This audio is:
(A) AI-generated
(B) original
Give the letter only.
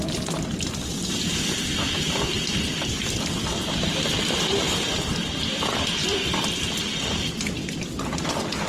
A